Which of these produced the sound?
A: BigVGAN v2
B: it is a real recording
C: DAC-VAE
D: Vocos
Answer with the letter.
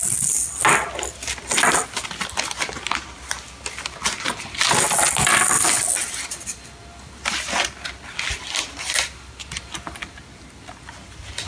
B